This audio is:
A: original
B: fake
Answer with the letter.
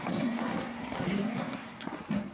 B